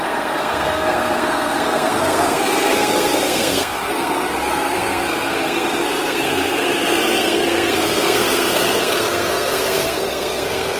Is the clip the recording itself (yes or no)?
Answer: no